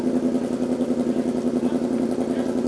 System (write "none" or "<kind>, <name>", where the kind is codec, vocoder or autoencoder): none